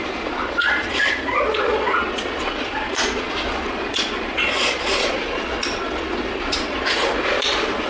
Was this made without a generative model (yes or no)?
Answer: no